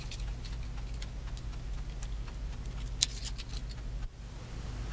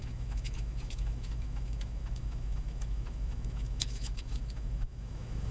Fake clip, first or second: second